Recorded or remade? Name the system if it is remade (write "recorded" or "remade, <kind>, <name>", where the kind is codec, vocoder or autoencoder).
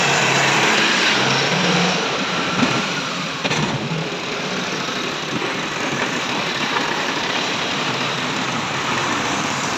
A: remade, vocoder, BigVGAN v2